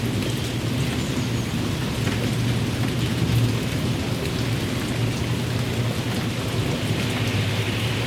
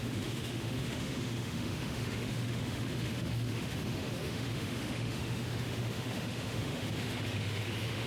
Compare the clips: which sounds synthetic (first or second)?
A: second